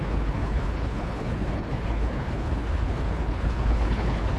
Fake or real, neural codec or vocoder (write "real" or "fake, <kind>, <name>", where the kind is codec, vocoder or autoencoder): fake, codec, HILCodec